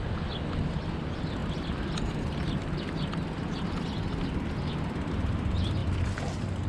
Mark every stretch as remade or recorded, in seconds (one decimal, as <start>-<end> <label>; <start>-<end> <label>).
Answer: 0.0-6.7 recorded